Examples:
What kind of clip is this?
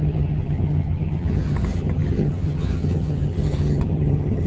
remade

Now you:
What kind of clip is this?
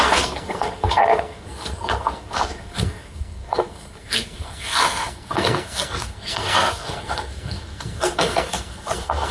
remade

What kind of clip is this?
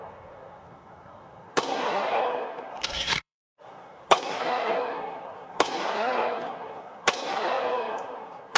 remade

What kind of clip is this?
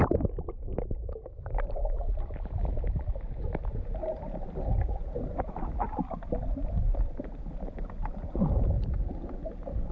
recorded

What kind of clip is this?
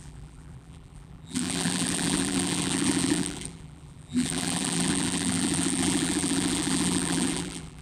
remade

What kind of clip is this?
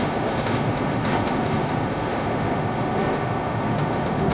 remade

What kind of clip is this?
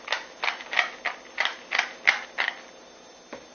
recorded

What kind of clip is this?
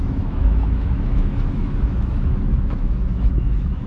remade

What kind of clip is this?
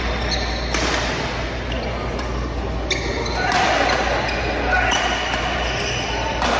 recorded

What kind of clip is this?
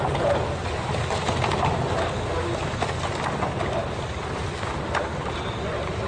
recorded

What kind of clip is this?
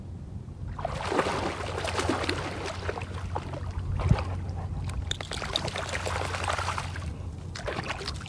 recorded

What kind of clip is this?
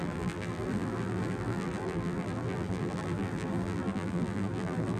remade